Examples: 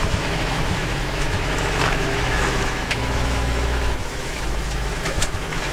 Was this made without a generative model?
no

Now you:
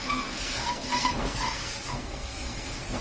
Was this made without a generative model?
no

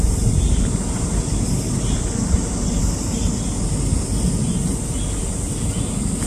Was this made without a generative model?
yes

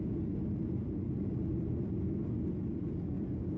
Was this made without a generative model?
yes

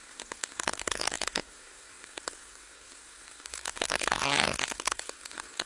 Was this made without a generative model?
no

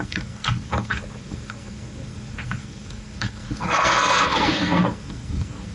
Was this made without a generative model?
no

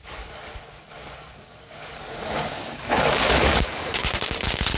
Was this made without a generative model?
no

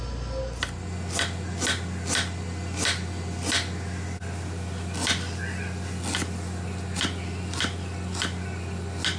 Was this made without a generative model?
yes